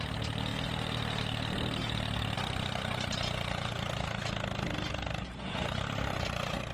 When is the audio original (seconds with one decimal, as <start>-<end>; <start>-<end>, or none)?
0.0-6.7